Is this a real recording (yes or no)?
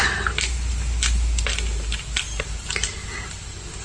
yes